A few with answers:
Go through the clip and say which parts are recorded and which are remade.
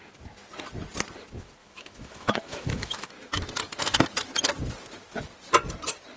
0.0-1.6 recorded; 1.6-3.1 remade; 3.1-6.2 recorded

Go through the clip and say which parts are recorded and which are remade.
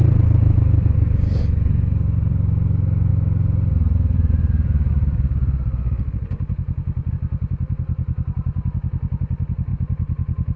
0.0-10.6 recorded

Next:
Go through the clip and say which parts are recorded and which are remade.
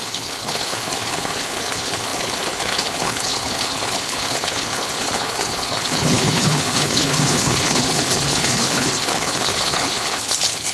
0.0-10.7 remade